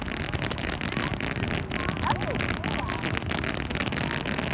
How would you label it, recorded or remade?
recorded